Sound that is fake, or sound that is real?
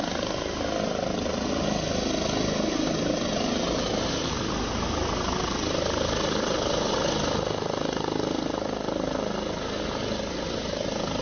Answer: real